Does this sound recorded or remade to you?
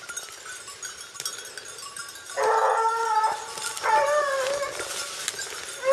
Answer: recorded